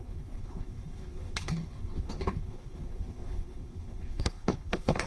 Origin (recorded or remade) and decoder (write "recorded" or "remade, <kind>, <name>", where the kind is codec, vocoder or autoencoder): remade, codec, HILCodec